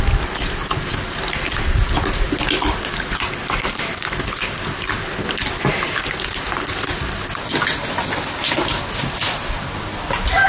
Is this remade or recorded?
remade